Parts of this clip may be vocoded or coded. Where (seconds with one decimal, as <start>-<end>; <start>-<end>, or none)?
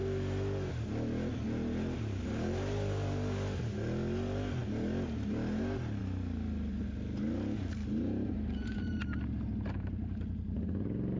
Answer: none